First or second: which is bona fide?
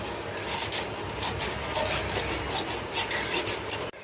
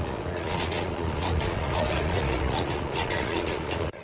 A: first